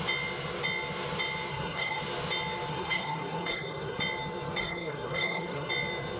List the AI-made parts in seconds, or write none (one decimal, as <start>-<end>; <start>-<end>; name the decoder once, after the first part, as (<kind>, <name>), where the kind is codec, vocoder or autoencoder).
1.5-2.0 (codec, SNAC); 2.7-4.0; 4.6-5.7